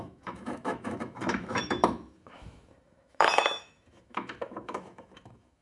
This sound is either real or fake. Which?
fake